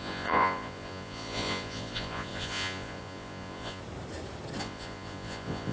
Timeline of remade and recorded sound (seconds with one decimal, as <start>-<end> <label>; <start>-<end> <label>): 0.0-3.8 remade; 3.8-4.6 recorded; 4.6-5.7 remade